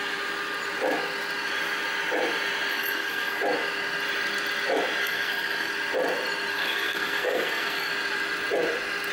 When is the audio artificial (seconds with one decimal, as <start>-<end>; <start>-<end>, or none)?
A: 2.7-3.4; 5.0-5.7; 6.5-7.9